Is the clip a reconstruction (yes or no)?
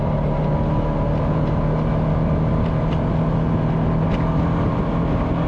no